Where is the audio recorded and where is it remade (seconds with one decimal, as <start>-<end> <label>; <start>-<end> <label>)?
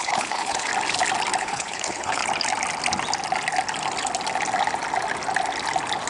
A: 0.0-0.7 remade; 0.7-1.4 recorded; 1.4-2.2 remade; 2.2-6.1 recorded